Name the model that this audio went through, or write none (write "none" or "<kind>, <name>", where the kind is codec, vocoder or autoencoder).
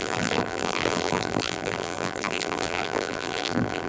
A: vocoder, BigVGAN v2